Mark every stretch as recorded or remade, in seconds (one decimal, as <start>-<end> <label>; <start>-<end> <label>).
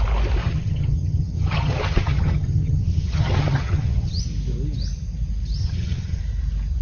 0.0-0.4 recorded; 0.4-4.2 remade; 4.2-5.6 recorded; 5.6-6.2 remade; 6.2-6.8 recorded